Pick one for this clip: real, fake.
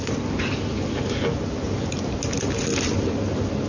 real